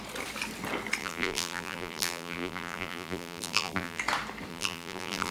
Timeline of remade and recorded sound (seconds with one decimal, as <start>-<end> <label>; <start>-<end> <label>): 0.0-1.0 recorded; 1.0-4.0 remade; 4.0-4.5 recorded; 4.5-5.3 remade